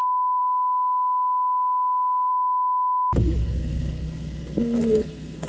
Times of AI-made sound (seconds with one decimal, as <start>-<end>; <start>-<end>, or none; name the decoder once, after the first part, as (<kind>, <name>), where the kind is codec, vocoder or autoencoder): 3.4-5.5 (codec, SNAC)